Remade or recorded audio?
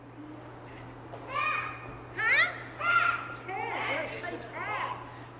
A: recorded